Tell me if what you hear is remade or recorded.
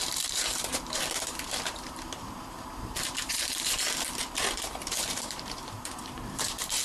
remade